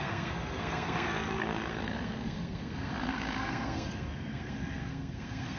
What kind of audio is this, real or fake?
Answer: fake